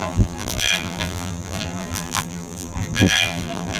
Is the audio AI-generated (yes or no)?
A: yes